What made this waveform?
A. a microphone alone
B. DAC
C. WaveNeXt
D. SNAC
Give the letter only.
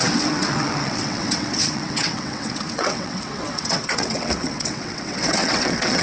C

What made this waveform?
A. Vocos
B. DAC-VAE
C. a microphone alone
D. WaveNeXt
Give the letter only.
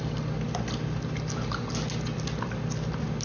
C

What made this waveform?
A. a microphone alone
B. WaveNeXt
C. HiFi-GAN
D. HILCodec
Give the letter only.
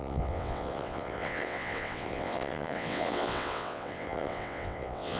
B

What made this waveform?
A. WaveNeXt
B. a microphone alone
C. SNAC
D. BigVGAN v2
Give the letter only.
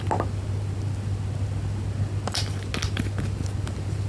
B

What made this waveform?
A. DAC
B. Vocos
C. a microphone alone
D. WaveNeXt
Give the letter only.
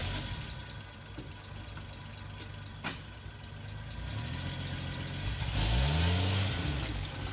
C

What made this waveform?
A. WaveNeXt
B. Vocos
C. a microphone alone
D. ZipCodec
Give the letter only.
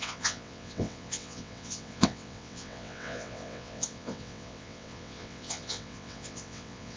A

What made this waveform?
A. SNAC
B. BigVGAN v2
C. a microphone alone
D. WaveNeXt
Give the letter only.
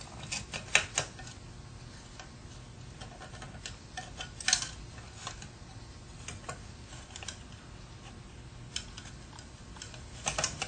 C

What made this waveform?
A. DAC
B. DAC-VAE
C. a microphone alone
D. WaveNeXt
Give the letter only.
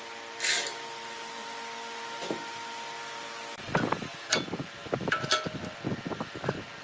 C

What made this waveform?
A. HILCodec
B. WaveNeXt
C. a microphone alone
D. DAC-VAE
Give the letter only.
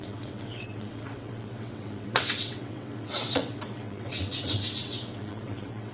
B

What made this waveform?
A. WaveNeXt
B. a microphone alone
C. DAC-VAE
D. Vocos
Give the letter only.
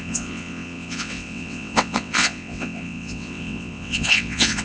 A